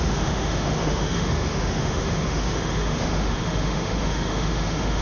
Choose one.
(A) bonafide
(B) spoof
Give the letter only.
B